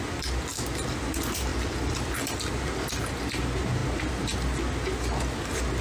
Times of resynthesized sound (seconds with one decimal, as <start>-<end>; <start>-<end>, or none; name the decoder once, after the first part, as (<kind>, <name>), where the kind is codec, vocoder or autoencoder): 0.5-1.0 (vocoder, BigVGAN v2); 1.5-3.0